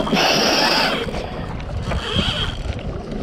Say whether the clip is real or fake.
real